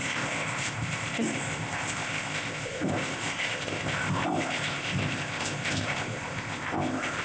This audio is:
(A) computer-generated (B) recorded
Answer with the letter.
A